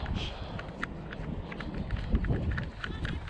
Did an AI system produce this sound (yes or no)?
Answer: no